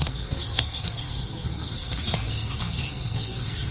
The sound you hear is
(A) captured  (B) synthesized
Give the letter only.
B